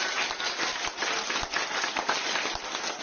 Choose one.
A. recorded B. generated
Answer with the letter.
A